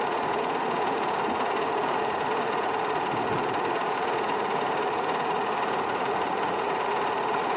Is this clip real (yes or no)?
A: no